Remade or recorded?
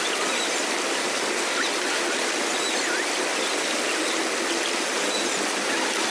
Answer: recorded